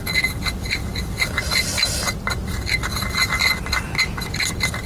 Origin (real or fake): real